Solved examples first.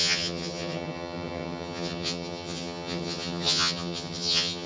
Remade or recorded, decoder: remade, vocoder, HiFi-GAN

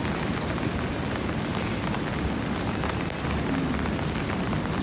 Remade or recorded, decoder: recorded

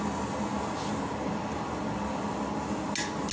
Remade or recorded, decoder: recorded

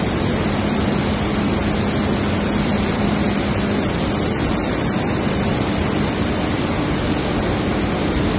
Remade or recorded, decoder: recorded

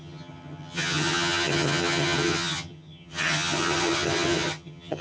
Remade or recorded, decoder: remade, vocoder, HiFi-GAN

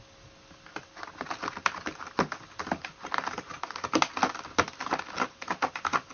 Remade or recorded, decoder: recorded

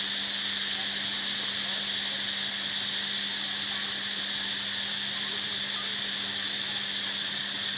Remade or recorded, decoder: recorded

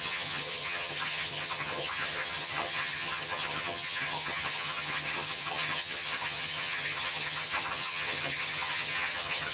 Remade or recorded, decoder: remade, vocoder, HiFi-GAN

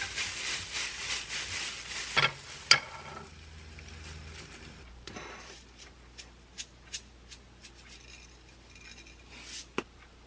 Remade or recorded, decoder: recorded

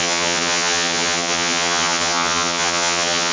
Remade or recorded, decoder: remade, vocoder, HiFi-GAN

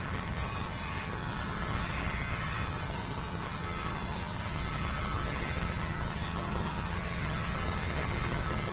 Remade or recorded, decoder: remade, vocoder, HiFi-GAN